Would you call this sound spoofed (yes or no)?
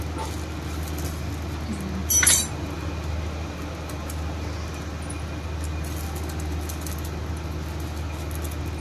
no